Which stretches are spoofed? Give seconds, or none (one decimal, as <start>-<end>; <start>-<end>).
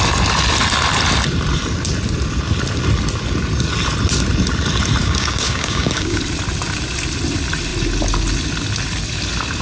5.0-6.2